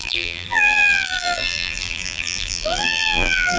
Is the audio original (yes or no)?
no